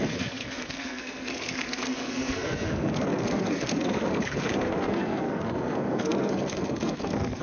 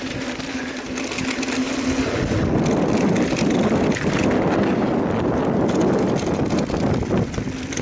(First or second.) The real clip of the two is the second